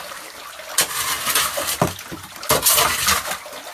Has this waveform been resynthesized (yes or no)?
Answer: no